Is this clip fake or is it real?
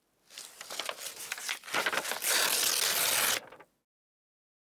real